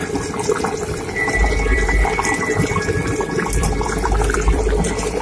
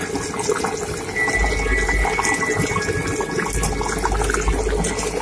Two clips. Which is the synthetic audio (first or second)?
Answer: first